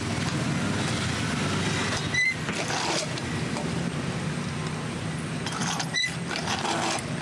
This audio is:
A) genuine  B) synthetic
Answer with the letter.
A